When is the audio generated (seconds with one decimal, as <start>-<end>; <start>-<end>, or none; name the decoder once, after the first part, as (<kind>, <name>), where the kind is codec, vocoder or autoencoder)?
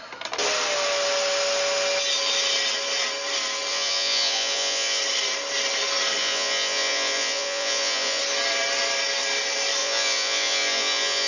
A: 3.7-5.0 (vocoder, Vocos); 6.2-8.2; 9.8-11.3